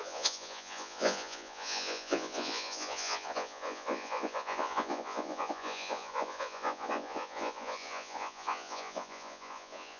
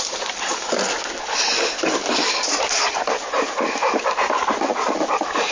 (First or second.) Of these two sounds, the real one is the second